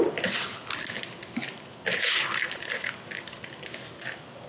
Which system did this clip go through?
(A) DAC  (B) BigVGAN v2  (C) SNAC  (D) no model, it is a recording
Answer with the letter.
D